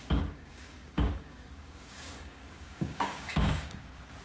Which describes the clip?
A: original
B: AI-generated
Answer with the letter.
B